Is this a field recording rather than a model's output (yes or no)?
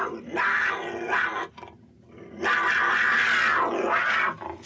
yes